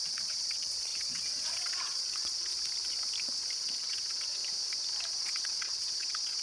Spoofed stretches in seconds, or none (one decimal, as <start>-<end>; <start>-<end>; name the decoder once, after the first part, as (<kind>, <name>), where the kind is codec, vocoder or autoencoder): 0.0-2.5 (vocoder, WaveNeXt); 3.6-4.4; 5.2-6.4